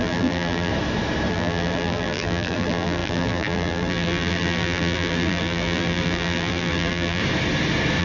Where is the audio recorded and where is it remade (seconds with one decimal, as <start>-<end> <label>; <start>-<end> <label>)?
0.0-0.7 remade; 0.7-1.3 recorded; 1.3-7.2 remade; 7.2-8.0 recorded